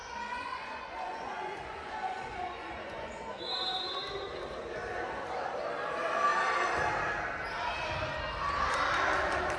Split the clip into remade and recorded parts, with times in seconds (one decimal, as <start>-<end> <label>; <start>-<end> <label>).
0.0-3.2 remade; 3.2-9.6 recorded